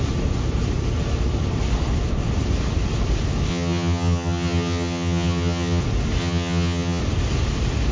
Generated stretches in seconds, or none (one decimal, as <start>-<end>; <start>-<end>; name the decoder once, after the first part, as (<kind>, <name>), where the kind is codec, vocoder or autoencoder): 3.5-5.8 (vocoder, HiFi-GAN); 6.2-7.0

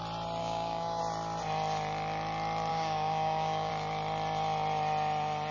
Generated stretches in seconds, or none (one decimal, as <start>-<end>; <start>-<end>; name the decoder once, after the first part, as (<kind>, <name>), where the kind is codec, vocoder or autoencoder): 0.4-1.0 (codec, DAC); 2.7-3.7

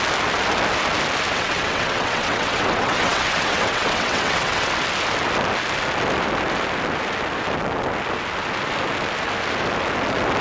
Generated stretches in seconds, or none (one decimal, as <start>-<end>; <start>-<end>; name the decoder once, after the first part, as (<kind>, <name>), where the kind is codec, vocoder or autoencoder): 1.3-4.7 (vocoder, WaveNeXt)

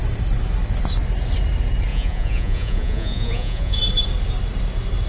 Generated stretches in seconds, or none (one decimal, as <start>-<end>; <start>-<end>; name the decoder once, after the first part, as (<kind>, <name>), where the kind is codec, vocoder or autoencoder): 1.9-3.8 (vocoder, Vocos)

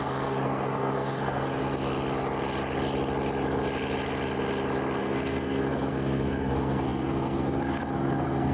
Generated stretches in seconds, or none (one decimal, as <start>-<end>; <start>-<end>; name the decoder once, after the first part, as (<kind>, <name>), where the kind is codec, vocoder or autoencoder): 0.0-1.6 (codec, SNAC); 5.0-8.5